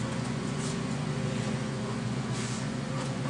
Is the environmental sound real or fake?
fake